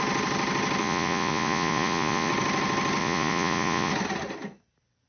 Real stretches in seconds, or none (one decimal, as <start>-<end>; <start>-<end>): 0.0-0.8; 2.3-3.0; 3.9-5.1